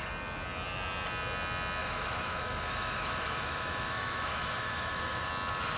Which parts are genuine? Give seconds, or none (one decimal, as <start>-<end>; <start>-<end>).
0.0-1.8; 5.3-5.8